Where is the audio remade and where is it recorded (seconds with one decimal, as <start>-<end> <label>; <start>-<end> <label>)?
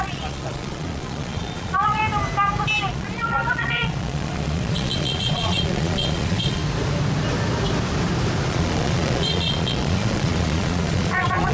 0.0-2.0 remade; 2.0-2.9 recorded; 2.9-6.6 remade; 6.6-8.5 recorded; 8.5-11.5 remade